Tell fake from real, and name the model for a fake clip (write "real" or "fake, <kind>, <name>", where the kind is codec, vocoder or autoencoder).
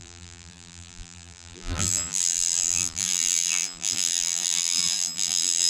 fake, vocoder, BigVGAN v2